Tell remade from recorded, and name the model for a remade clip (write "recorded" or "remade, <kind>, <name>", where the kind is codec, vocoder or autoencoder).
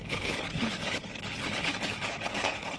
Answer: remade, codec, HILCodec